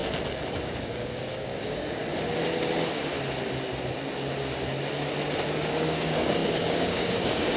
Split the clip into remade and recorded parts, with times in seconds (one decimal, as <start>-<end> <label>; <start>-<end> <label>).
0.0-0.5 recorded; 0.5-2.0 remade; 2.0-5.7 recorded; 5.7-7.6 remade